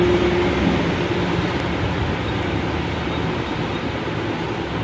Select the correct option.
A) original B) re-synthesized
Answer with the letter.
A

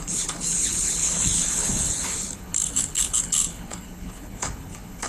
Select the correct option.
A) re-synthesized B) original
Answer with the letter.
A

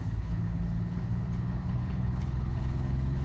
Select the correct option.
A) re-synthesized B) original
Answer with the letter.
A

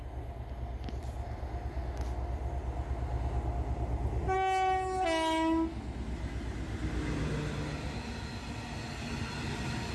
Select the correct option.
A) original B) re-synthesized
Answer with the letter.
A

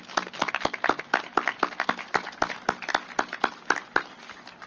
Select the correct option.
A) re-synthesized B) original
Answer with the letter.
B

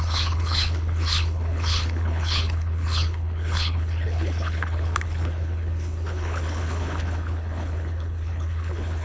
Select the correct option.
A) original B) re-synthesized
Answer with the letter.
B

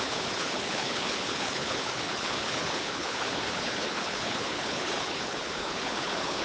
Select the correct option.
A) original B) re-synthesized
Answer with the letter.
B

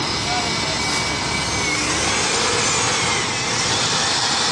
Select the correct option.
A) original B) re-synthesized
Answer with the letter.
A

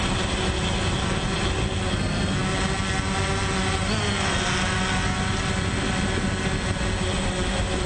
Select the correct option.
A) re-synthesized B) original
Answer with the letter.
B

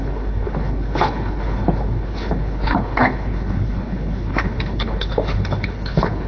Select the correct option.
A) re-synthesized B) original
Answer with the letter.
A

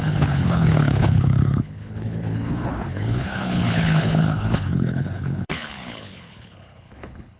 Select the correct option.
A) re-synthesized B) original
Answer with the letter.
A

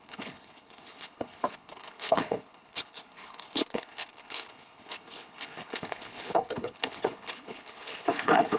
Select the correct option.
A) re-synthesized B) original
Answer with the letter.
A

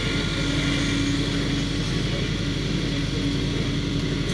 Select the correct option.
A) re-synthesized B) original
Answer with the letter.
B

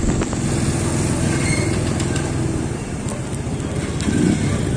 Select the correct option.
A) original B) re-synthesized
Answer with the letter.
A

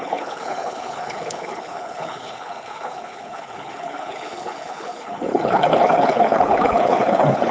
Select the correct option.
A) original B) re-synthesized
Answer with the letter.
B